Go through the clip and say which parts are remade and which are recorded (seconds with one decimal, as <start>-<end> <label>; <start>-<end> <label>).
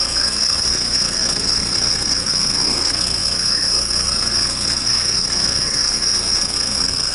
0.0-7.1 remade